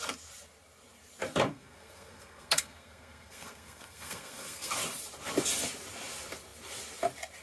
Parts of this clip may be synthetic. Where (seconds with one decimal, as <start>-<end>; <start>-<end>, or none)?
1.5-4.7